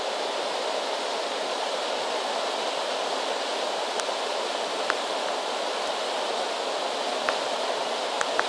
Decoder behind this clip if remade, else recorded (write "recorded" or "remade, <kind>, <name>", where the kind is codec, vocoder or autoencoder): recorded